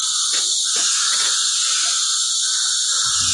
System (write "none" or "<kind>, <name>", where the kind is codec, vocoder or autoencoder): vocoder, Vocos